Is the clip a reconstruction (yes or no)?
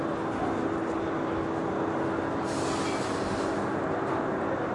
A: no